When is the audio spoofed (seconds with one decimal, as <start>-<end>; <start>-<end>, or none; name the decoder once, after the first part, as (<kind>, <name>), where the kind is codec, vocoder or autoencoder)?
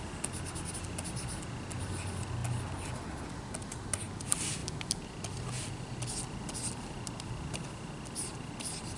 none